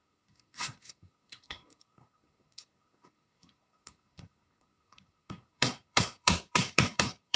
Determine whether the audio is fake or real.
fake